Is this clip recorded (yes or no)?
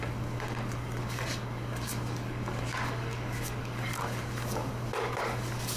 no